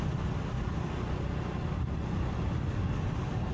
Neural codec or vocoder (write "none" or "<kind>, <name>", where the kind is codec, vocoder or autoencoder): none